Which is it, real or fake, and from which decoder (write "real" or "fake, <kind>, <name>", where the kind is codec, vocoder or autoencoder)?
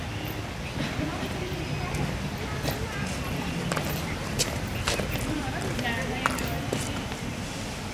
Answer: real